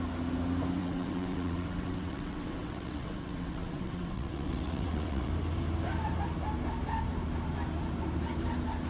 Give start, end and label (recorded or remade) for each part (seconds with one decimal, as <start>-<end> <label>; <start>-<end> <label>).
0.0-0.8 recorded; 0.8-5.3 remade; 5.3-8.9 recorded